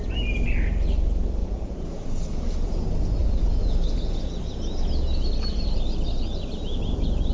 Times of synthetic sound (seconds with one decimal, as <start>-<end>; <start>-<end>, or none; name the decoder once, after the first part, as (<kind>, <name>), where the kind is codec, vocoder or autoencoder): 1.4-2.8 (vocoder, Vocos); 3.2-4.4